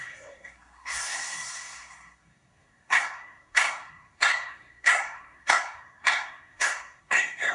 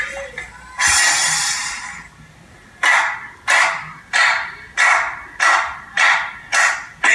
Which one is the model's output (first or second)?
first